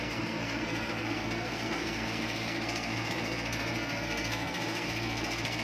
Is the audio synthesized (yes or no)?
yes